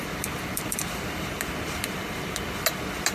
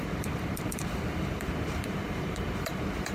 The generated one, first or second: second